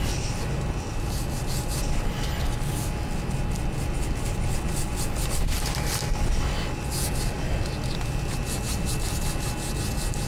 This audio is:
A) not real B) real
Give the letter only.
B